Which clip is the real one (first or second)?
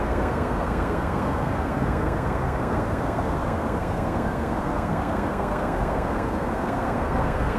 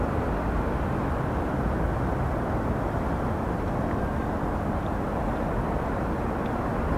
second